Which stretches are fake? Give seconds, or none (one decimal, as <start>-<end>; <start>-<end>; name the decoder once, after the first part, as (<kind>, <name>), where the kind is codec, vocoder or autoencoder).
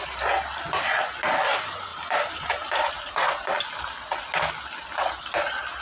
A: 1.9-2.9 (vocoder, BigVGAN v2)